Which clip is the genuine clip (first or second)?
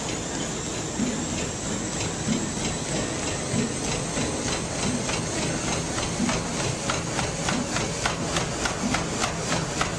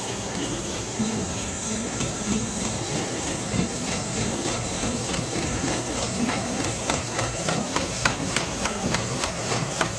first